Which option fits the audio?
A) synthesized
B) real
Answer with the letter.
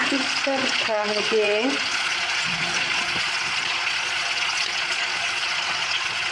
A